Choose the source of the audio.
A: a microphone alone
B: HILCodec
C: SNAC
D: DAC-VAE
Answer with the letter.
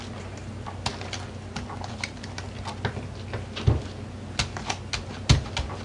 A